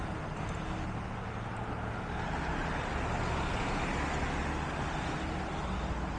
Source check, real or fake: real